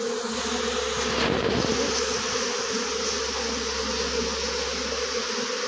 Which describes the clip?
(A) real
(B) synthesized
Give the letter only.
A